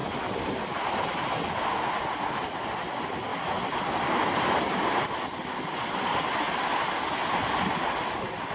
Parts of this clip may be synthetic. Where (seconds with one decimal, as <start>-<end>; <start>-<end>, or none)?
none